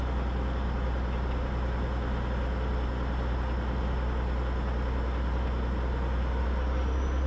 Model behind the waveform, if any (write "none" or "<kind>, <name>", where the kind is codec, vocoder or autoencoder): none